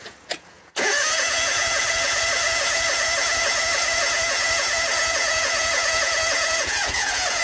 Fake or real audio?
fake